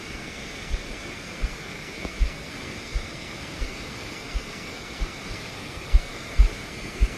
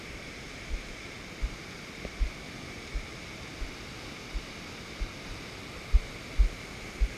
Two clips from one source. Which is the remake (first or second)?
first